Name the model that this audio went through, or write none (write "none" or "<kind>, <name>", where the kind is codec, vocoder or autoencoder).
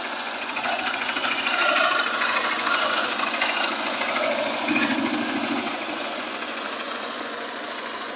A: vocoder, Vocos